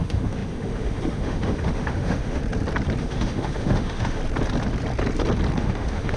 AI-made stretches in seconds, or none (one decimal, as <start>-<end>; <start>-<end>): 0.0-2.4; 3.0-4.2; 5.6-6.2